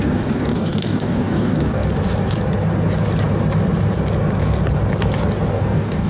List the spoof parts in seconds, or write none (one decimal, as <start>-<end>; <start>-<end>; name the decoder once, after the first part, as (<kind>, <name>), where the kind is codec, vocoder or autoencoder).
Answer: 0.0-1.8 (codec, DAC); 5.5-6.1